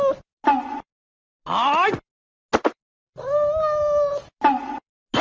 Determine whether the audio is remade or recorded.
recorded